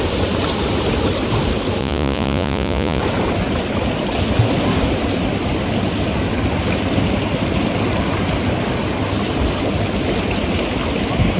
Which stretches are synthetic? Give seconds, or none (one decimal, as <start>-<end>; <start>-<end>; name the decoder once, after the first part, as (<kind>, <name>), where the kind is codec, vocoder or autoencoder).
1.8-3.0 (vocoder, Vocos)